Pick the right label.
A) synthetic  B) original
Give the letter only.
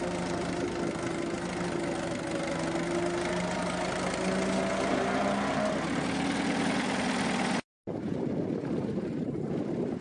B